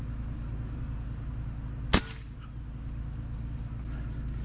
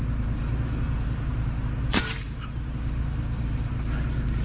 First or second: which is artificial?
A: second